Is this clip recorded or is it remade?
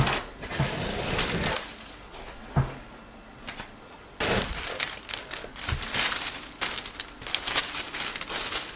recorded